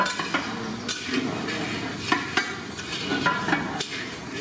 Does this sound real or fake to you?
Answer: real